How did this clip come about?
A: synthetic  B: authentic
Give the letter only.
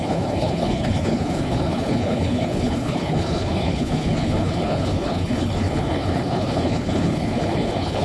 A